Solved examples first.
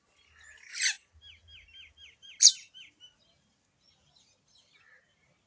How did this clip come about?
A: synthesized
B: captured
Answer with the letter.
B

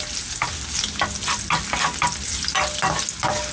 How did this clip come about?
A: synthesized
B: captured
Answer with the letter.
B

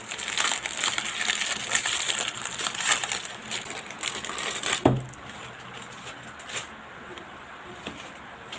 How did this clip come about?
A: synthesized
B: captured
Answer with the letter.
B